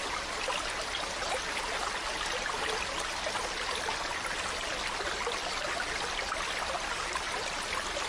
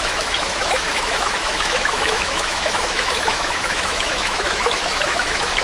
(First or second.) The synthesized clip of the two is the second